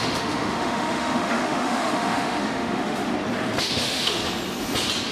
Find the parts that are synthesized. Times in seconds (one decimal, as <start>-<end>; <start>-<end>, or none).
0.0-3.1; 3.6-4.2